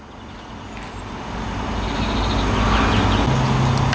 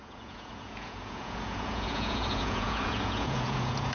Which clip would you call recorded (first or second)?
first